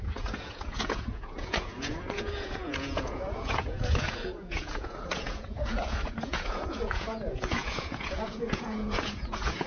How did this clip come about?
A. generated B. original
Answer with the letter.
A